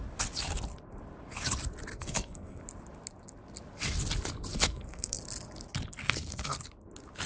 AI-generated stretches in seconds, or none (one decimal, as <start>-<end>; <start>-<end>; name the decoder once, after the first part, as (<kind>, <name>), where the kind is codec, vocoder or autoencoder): 1.9-2.6 (codec, SNAC); 4.5-5.2; 6.0-6.6